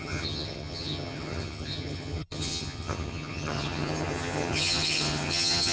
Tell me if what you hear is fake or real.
fake